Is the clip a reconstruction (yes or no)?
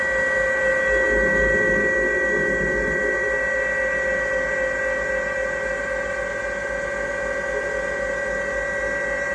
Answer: no